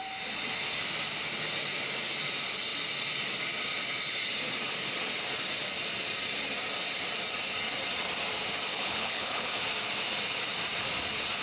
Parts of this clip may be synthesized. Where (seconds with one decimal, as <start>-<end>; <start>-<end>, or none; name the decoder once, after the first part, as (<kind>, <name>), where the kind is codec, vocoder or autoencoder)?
8.7-9.6 (codec, HILCodec)